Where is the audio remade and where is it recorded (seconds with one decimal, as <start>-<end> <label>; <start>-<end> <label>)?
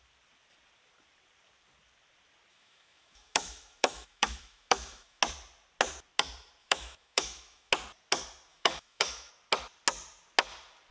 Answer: 0.0-2.5 recorded; 2.5-5.2 remade; 5.2-6.6 recorded; 6.6-7.7 remade; 7.7-8.5 recorded; 8.5-9.3 remade; 9.3-10.9 recorded